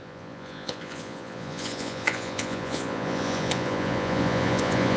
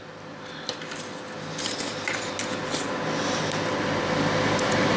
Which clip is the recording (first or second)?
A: second